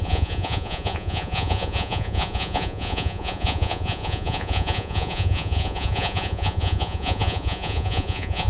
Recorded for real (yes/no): no